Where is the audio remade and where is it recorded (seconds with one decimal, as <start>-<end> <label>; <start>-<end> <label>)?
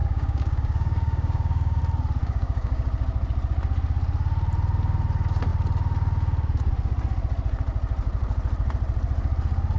0.0-1.8 remade; 1.8-2.2 recorded; 2.2-2.9 remade; 2.9-9.8 recorded